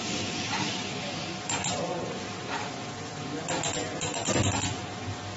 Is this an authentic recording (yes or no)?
yes